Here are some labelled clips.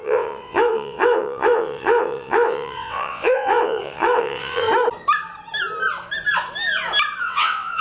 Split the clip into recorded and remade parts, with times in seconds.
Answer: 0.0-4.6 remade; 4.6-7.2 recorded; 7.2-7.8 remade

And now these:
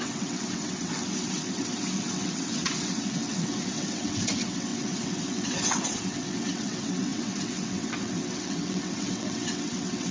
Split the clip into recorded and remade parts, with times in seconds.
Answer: 0.0-10.1 remade